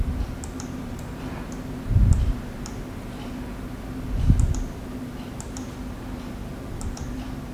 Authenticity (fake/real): real